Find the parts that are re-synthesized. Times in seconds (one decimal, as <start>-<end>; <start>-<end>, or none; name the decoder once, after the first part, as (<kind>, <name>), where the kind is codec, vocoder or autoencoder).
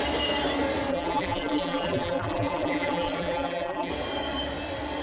0.9-3.9 (vocoder, BigVGAN v2)